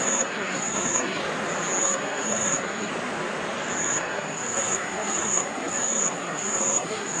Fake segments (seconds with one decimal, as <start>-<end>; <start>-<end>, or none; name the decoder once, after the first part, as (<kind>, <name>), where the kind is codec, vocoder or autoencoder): 0.0-1.2 (codec, SNAC); 1.8-2.9; 3.8-7.2